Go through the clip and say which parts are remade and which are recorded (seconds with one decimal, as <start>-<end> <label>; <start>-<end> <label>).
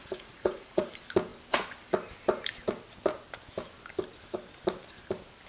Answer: 0.0-0.9 remade; 0.9-5.5 recorded